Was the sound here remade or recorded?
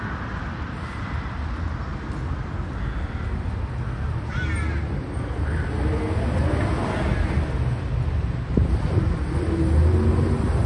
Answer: recorded